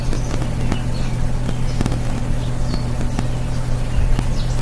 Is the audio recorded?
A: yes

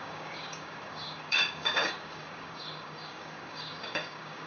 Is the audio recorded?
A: no